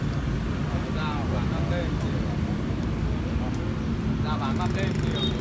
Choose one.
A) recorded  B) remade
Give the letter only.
A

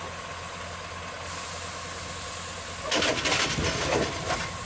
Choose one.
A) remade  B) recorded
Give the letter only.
B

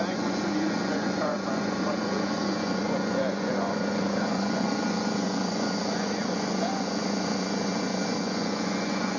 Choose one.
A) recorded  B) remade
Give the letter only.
B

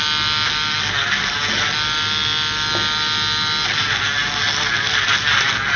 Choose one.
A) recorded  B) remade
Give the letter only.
A